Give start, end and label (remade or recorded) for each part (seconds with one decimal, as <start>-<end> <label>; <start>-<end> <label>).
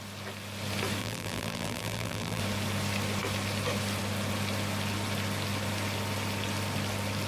0.0-1.0 recorded; 1.0-2.4 remade; 2.4-7.3 recorded